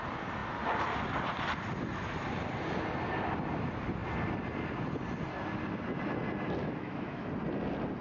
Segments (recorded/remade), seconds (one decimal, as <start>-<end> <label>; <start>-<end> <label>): 0.0-6.6 recorded; 6.6-7.3 remade; 7.3-8.0 recorded

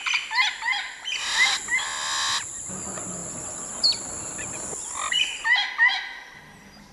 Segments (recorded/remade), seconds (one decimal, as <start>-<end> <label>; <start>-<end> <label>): 0.0-6.9 recorded

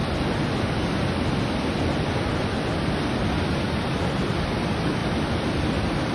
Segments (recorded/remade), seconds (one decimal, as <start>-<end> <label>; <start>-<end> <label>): 0.0-6.1 recorded

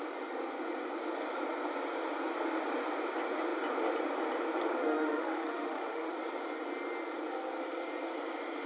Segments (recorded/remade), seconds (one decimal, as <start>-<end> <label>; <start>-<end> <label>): 0.0-4.8 recorded; 4.8-6.1 remade; 6.1-8.7 recorded

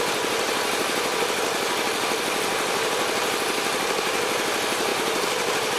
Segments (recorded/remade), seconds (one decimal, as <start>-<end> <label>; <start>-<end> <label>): 0.0-5.8 recorded